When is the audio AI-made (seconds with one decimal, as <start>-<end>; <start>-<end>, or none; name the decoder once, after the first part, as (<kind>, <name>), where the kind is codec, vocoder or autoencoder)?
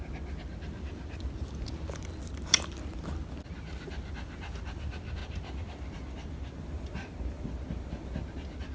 none